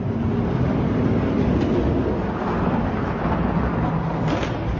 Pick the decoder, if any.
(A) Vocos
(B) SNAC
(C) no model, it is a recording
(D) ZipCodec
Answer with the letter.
C